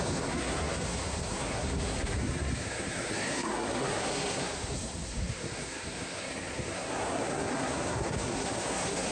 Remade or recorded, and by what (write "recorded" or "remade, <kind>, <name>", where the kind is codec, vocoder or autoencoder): remade, codec, SNAC